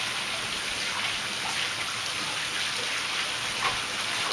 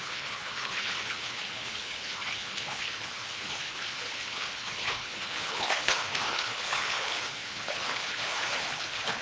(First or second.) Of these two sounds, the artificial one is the second